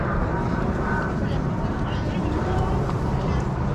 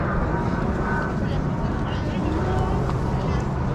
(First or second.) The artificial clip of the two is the first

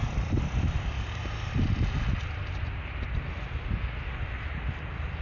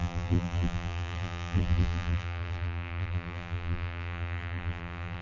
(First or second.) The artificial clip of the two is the second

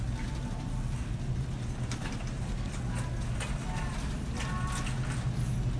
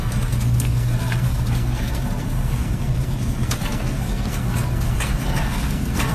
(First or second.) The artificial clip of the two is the second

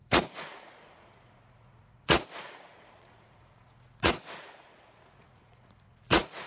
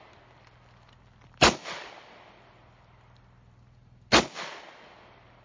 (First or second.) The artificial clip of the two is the first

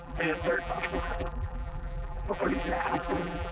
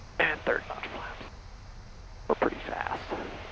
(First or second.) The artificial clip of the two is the first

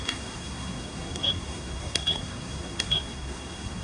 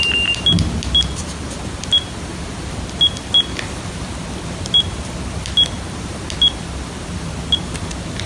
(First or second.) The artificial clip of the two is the first